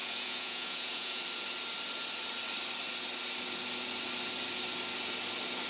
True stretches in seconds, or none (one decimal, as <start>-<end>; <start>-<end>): 1.2-5.7